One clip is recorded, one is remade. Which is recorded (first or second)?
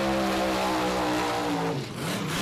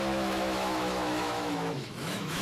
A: first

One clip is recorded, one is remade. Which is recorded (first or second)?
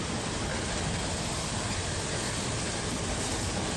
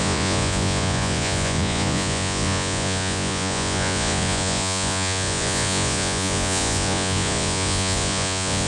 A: first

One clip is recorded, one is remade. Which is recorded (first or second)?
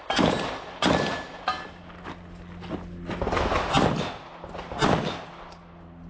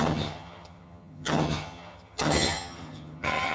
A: first